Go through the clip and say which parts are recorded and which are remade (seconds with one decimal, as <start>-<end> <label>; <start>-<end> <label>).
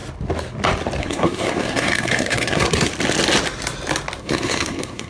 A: 0.0-1.0 recorded; 1.0-2.9 remade; 2.9-4.2 recorded; 4.2-5.1 remade